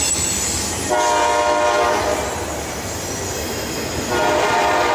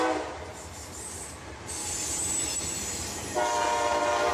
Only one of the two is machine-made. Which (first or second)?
second